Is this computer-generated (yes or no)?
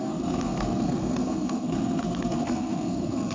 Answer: yes